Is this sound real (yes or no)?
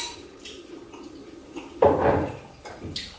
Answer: yes